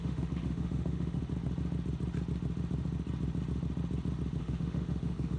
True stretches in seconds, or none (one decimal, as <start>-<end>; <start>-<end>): 1.2-4.4